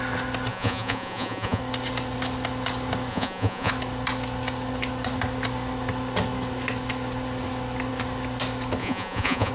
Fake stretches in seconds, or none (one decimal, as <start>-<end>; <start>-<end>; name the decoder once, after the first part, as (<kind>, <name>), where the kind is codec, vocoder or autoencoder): 0.5-1.6 (vocoder, Vocos); 3.1-3.7; 8.8-9.5